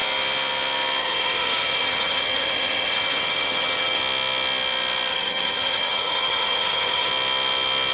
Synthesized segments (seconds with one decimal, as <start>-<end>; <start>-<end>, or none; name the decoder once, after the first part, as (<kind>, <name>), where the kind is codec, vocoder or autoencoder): 1.0-4.0 (vocoder, HiFi-GAN); 5.1-7.1